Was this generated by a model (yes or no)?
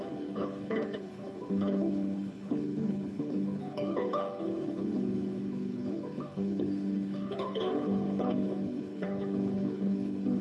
yes